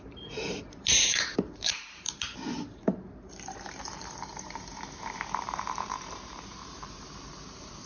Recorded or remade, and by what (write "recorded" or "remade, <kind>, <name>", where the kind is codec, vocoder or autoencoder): remade, vocoder, BigVGAN v2